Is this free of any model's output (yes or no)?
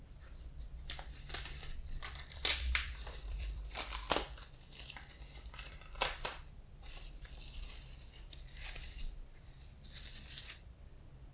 no